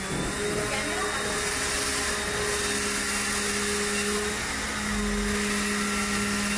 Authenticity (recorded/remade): recorded